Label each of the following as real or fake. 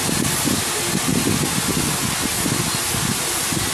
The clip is real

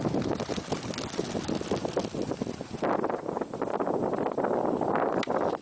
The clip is real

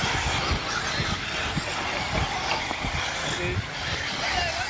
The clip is real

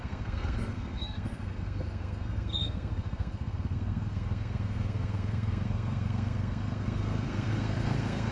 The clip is fake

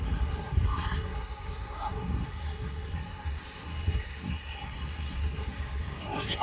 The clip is fake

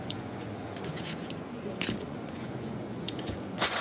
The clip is fake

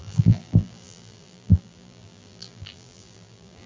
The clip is fake